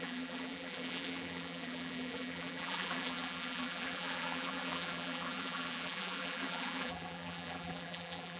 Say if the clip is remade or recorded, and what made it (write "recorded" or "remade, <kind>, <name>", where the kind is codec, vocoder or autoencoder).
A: remade, vocoder, BigVGAN v2